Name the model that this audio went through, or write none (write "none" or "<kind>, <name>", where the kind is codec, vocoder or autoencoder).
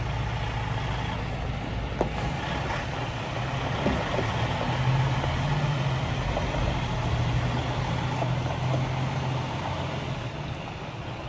none